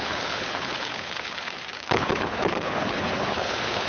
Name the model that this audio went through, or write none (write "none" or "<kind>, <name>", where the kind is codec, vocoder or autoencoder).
codec, HILCodec